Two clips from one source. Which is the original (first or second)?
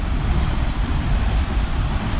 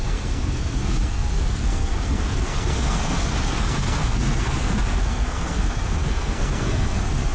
first